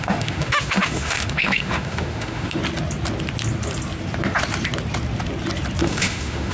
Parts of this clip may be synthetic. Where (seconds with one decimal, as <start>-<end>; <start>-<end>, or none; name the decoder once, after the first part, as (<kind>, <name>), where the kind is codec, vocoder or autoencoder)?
0.0-2.6 (autoencoder, DAC-VAE); 5.8-6.5